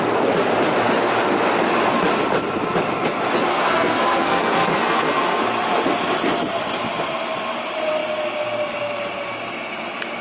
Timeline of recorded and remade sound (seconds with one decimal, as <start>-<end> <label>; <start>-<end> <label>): 0.0-3.5 recorded; 3.5-5.4 remade; 5.4-10.2 recorded